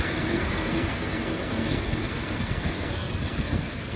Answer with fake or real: fake